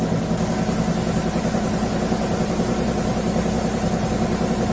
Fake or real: real